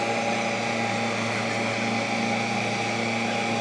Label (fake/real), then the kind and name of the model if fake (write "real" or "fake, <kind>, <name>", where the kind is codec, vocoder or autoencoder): real